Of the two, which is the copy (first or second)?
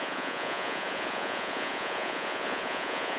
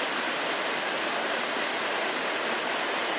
first